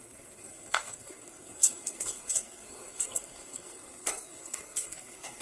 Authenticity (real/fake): fake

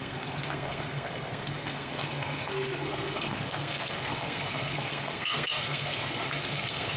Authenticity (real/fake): fake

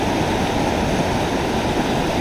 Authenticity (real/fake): real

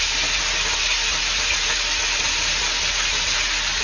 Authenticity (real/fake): real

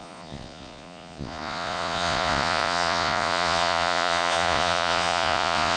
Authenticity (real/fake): fake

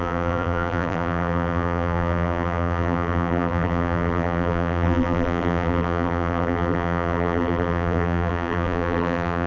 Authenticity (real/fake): fake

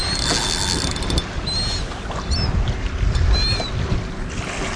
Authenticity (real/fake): real